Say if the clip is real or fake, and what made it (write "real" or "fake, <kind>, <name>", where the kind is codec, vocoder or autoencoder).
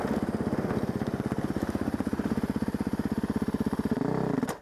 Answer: real